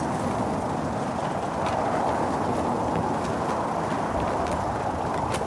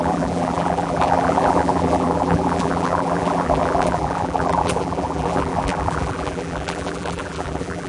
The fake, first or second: second